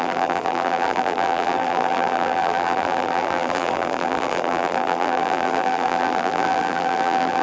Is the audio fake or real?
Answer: fake